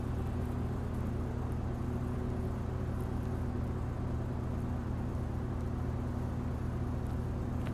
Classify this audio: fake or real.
real